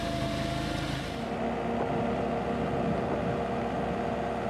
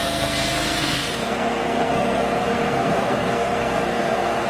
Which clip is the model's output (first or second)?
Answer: second